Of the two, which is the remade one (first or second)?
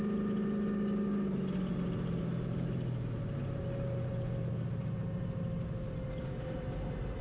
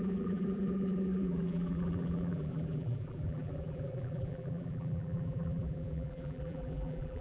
second